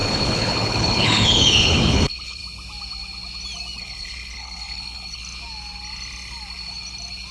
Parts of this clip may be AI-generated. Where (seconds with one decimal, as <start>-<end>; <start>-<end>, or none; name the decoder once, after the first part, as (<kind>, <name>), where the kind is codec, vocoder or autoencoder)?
0.0-2.4 (codec, HILCodec); 3.8-5.2